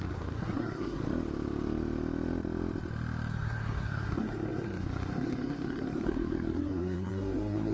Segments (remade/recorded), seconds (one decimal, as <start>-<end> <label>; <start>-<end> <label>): 0.0-1.0 remade; 1.0-3.3 recorded; 3.3-7.7 remade